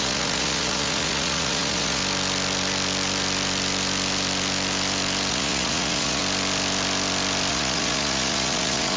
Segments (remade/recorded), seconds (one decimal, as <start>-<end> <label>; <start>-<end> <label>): 0.0-2.0 remade; 2.0-5.3 recorded; 5.3-6.2 remade; 6.2-7.5 recorded; 7.5-9.0 remade